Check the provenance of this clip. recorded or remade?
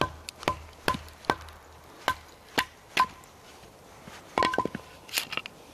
recorded